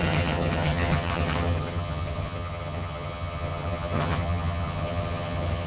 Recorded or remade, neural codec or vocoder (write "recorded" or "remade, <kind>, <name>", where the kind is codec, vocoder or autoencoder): remade, vocoder, HiFi-GAN